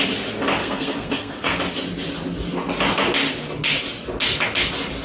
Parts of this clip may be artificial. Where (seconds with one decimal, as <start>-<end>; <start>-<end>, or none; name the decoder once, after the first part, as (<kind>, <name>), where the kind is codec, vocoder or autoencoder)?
0.6-1.6 (codec, SNAC)